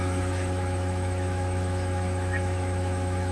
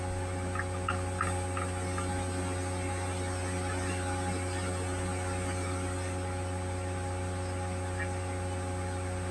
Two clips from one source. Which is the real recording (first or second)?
second